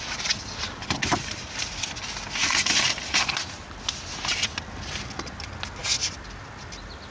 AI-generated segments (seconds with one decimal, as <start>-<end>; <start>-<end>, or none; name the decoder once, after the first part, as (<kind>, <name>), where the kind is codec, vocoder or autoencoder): 1.1-1.8 (vocoder, BigVGAN v2); 2.4-3.3